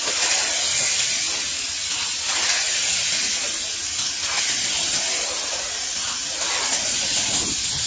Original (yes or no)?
yes